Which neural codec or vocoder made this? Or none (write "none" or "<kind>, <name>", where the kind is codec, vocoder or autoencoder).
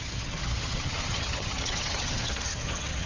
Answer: vocoder, HiFi-GAN